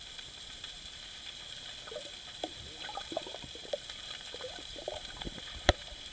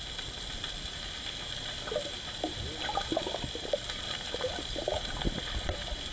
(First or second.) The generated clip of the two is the first